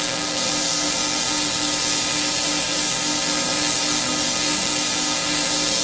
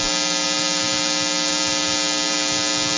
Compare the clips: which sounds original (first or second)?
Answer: second